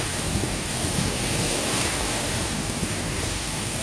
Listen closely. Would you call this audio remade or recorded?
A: remade